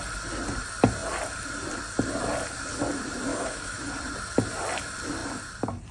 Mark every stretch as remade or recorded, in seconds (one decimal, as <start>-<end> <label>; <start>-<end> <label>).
0.0-3.3 recorded; 3.3-3.9 remade; 3.9-5.9 recorded